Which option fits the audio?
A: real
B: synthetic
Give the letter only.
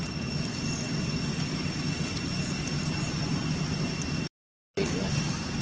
A